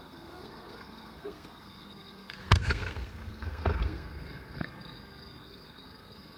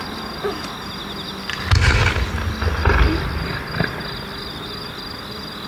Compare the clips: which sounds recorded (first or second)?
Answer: second